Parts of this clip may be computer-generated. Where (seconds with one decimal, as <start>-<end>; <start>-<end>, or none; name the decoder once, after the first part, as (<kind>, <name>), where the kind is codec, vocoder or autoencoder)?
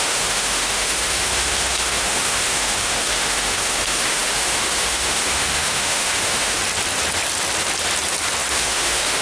0.0-6.6 (autoencoder, DAC-VAE); 8.5-9.2